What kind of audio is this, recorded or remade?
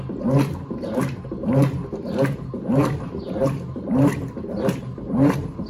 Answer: recorded